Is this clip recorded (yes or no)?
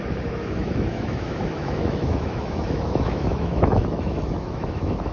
no